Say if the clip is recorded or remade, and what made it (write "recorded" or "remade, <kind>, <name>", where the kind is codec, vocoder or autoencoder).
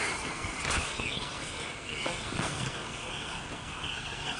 remade, codec, SNAC